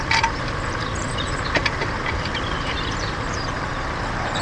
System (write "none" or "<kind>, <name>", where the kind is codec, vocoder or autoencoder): vocoder, BigVGAN v2